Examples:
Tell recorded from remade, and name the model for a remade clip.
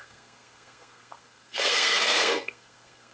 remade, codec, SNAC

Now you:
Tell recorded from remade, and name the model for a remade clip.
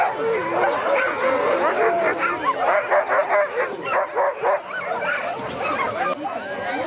recorded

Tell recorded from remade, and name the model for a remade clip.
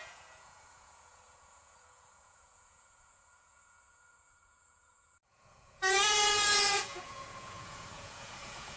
remade, vocoder, Vocos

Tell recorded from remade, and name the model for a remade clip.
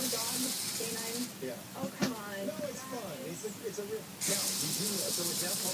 recorded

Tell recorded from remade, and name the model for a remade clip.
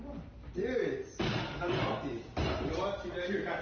recorded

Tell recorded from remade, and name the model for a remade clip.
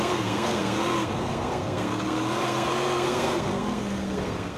remade, codec, SNAC